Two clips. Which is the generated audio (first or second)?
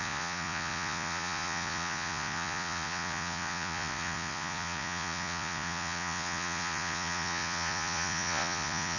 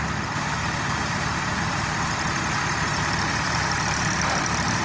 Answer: first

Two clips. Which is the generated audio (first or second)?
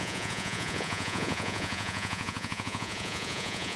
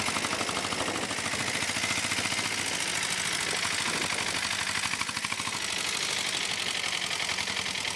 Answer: first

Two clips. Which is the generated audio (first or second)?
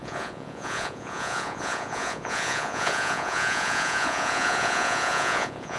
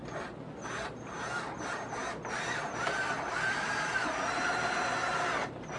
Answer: first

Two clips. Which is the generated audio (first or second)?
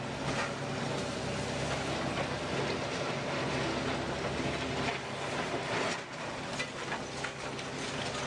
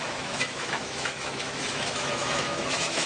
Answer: second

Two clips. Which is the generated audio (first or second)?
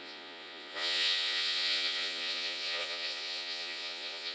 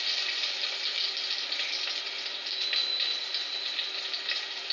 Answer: first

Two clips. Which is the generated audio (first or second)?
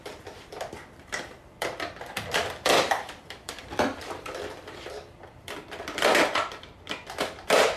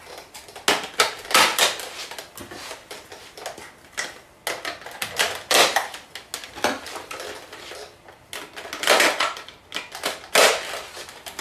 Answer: first